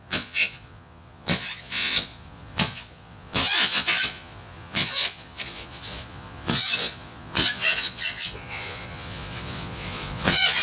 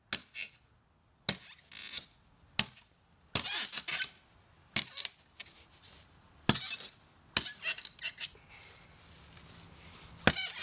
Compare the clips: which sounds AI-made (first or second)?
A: first